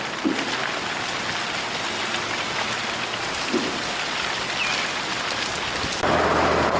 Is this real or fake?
real